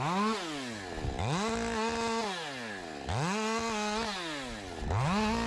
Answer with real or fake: real